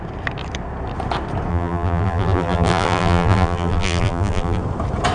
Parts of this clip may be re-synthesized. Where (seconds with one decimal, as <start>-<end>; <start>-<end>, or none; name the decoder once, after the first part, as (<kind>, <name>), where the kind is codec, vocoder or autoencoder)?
1.5-4.6 (vocoder, BigVGAN v2)